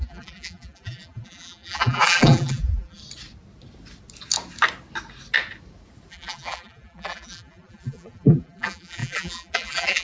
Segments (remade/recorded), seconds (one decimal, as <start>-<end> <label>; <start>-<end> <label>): 0.0-3.0 remade; 3.0-6.1 recorded; 6.1-10.0 remade